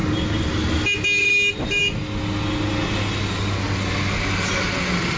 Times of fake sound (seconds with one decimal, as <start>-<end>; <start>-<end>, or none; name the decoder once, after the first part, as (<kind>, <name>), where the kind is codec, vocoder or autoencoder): none